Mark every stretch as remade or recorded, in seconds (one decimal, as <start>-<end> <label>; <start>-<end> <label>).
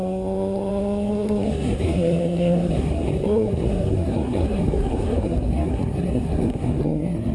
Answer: 0.0-7.3 remade